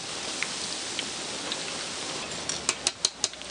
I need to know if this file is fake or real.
real